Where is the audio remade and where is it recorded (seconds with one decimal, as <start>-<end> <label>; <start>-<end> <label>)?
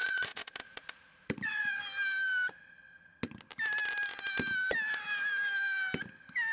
0.0-1.8 remade; 1.8-6.5 recorded